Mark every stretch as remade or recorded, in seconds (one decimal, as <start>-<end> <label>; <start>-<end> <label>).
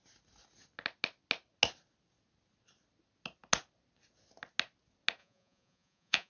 0.0-5.2 recorded; 5.2-6.3 remade